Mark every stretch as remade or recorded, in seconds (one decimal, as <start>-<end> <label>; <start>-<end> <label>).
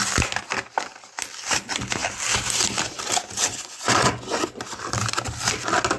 0.0-3.5 recorded; 3.5-4.6 remade; 4.6-6.0 recorded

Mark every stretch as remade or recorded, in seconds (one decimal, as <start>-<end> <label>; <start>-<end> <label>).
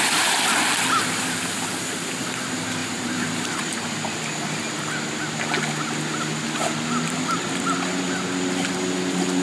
0.0-2.8 recorded; 2.8-4.2 remade; 4.2-9.4 recorded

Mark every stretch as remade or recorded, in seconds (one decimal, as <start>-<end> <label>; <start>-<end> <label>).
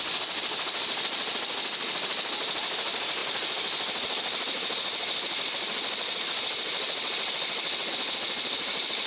0.0-9.1 recorded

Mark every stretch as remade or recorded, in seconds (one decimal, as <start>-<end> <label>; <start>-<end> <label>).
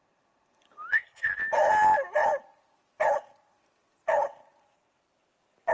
0.0-0.9 recorded; 0.9-1.4 remade; 1.4-5.7 recorded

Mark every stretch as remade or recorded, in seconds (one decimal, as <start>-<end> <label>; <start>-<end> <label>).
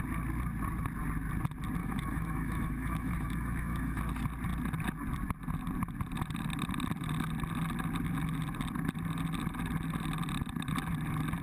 0.0-1.8 recorded; 1.8-4.0 remade; 4.0-11.4 recorded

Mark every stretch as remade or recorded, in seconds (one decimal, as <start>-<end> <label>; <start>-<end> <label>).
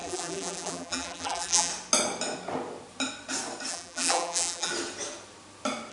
0.0-1.7 remade; 1.7-3.7 recorded; 3.7-4.7 remade; 4.7-5.9 recorded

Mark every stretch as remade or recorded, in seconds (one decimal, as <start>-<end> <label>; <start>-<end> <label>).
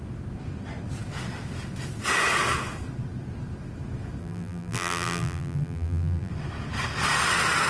0.0-4.2 recorded; 4.2-6.3 remade; 6.3-7.7 recorded